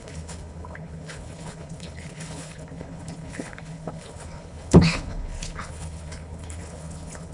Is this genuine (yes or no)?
no